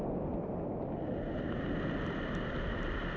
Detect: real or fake real